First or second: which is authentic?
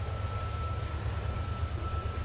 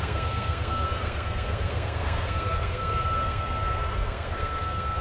first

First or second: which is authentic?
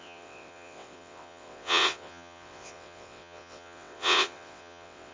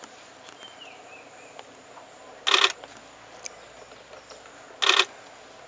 second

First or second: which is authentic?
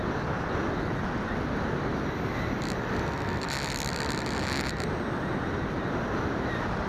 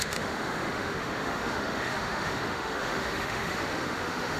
first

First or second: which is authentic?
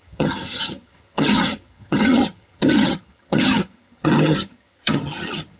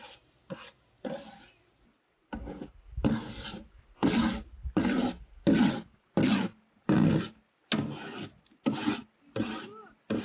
second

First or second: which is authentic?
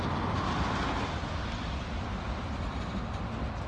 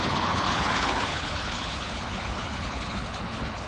first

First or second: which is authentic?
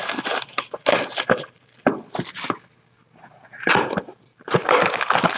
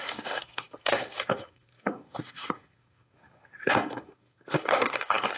first